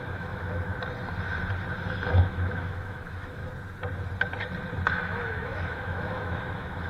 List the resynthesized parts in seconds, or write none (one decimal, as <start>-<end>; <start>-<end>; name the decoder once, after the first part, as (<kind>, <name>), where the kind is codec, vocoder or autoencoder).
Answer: 0.0-0.7 (autoencoder, DAC-VAE); 2.2-3.4; 4.9-6.9